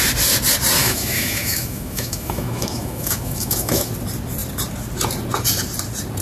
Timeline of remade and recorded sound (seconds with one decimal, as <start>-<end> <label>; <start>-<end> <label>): 0.0-0.8 recorded; 0.8-3.9 remade; 3.9-6.2 recorded